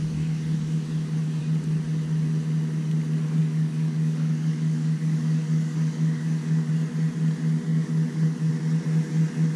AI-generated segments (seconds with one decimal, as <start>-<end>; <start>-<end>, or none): 0.0-1.4; 3.4-6.7; 7.7-8.5